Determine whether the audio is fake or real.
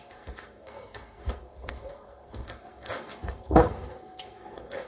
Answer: fake